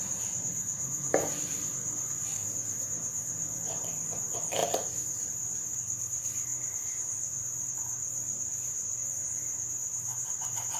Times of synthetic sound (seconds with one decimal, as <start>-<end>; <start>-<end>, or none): 0.0-9.0; 9.7-10.8

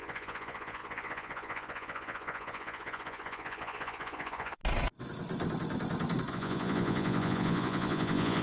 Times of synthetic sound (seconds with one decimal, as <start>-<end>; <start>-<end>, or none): 0.0-4.6; 6.3-8.4

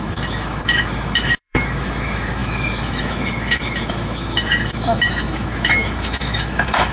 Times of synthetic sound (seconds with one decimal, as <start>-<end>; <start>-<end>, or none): 0.0-6.9

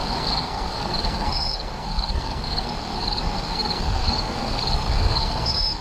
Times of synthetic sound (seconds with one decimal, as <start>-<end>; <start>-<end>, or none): 0.0-5.8

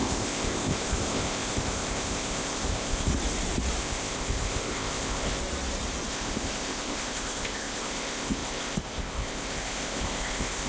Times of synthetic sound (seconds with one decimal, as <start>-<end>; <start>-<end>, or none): 0.0-3.1; 3.8-5.4; 6.1-10.7

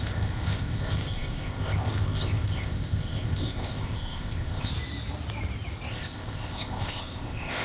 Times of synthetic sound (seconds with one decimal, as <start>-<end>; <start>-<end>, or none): 0.0-4.7; 5.9-7.6